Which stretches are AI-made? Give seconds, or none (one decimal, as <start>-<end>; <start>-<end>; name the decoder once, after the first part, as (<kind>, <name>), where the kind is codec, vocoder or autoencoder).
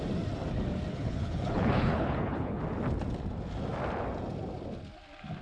0.9-2.6 (codec, HILCodec)